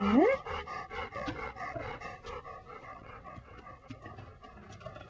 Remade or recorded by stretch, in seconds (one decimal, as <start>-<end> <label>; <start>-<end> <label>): 0.0-1.0 recorded; 1.0-2.0 remade; 2.0-2.8 recorded; 2.8-4.0 remade; 4.0-5.1 recorded